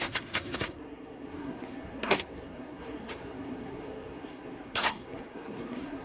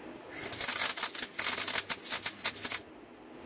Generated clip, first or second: first